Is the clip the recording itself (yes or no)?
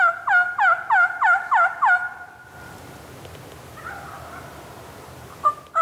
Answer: yes